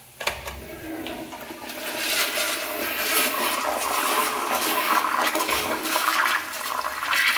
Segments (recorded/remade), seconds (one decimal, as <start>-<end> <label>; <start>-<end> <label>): 0.0-4.2 recorded; 4.2-6.2 remade; 6.2-7.4 recorded